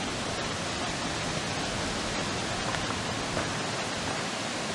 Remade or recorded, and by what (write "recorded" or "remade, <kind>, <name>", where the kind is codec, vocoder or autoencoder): recorded